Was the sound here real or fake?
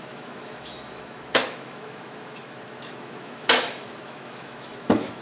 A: fake